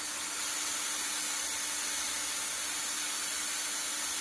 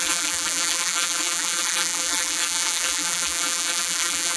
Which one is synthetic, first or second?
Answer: second